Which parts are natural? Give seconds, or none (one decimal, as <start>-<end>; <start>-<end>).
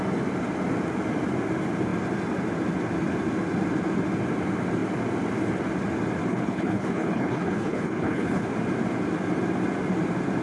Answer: 0.0-6.3; 8.5-10.4